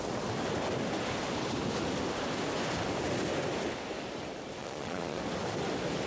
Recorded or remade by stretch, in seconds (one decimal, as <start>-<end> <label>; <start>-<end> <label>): 0.0-4.6 recorded; 4.6-5.2 remade; 5.2-6.1 recorded